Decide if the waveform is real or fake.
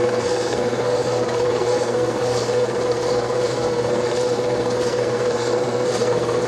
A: fake